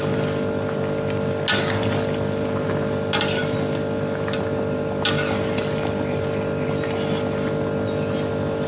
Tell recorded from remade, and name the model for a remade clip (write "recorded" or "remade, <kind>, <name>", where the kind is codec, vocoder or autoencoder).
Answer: recorded